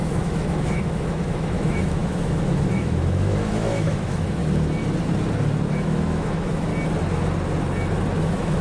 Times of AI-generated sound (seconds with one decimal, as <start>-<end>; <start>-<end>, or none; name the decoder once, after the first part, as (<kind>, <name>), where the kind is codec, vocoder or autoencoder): 0.0-4.4 (autoencoder, DAC-VAE); 5.7-6.7; 8.2-8.6